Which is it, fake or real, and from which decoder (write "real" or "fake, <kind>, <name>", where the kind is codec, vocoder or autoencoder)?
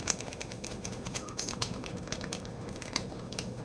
fake, autoencoder, DAC-VAE